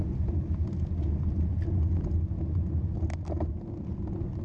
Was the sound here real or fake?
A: real